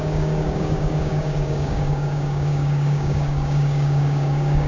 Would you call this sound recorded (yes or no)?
no